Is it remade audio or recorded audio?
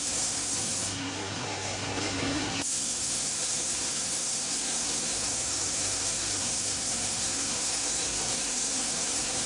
remade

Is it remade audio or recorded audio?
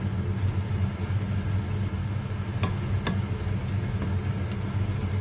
recorded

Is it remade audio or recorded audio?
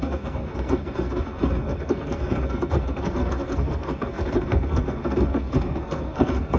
remade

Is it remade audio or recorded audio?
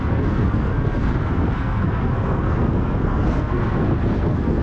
remade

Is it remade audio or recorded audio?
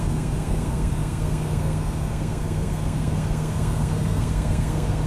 remade